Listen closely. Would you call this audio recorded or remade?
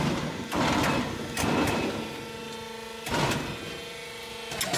recorded